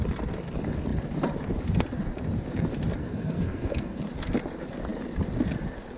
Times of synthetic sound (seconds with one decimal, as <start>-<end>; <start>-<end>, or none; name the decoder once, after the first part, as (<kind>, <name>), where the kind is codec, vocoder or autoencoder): 3.0-4.0 (codec, SNAC)